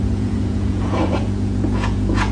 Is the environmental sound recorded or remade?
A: remade